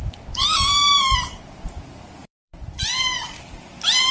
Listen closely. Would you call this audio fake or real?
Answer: fake